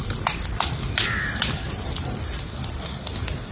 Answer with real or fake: real